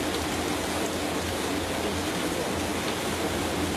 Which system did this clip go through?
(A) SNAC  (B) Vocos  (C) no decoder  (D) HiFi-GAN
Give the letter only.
C